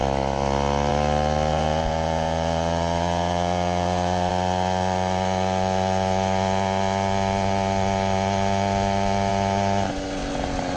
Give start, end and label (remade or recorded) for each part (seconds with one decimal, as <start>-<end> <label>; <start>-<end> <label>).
0.0-1.5 recorded; 1.5-4.3 remade; 4.3-10.8 recorded